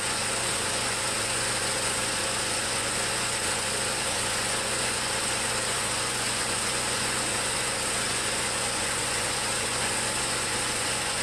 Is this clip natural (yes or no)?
no